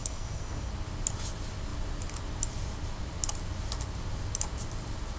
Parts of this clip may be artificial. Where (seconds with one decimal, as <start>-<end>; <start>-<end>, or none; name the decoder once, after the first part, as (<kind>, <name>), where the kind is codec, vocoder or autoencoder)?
0.0-0.7 (codec, SNAC)

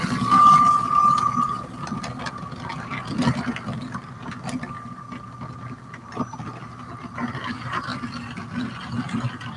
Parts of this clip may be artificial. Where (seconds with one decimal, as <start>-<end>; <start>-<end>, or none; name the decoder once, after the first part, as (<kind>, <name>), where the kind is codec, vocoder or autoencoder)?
none

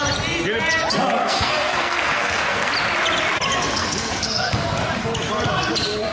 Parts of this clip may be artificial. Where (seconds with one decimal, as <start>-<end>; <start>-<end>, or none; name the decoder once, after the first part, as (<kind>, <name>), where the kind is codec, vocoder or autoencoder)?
1.2-2.7 (codec, SNAC); 3.8-4.6

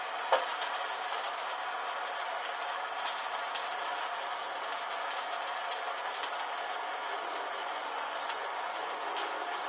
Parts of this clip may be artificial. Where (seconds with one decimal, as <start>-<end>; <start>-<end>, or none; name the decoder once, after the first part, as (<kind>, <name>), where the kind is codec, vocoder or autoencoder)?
7.6-8.9 (vocoder, Vocos)

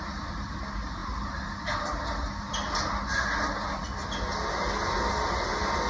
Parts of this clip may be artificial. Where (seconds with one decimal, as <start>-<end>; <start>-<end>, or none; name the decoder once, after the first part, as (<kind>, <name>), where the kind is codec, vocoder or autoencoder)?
none

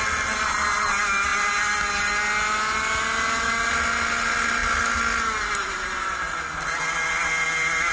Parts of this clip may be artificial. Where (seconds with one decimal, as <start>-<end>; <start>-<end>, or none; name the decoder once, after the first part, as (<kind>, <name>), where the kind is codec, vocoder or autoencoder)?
none